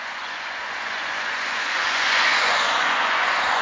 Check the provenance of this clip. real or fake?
fake